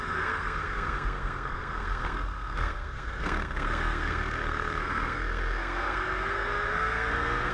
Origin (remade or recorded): remade